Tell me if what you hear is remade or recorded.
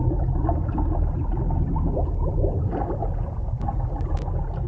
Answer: recorded